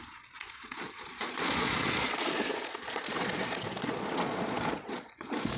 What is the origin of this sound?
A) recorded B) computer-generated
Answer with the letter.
B